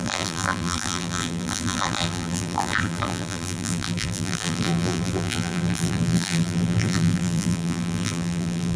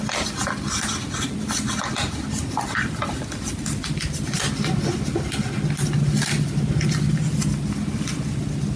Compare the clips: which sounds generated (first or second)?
first